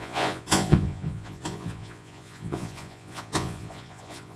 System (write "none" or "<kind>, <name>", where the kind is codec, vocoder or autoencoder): vocoder, Vocos